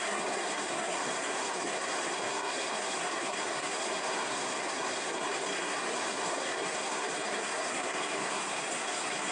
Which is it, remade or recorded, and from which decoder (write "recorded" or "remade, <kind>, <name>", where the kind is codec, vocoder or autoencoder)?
remade, codec, SNAC